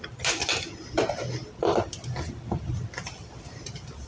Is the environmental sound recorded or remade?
recorded